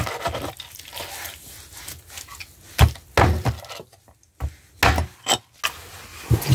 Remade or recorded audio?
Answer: recorded